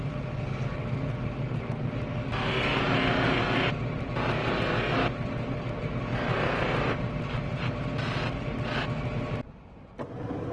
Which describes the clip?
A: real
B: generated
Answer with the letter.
A